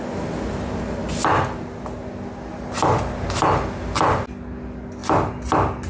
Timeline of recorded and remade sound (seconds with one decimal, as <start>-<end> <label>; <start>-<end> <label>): 0.0-5.9 recorded